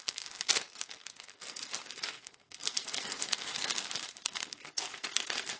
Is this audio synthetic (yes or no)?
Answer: yes